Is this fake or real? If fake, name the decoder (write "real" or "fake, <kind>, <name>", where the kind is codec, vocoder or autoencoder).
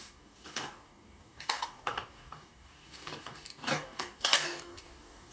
fake, codec, DAC